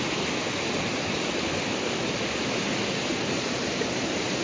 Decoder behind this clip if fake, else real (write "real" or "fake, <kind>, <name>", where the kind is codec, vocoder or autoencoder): real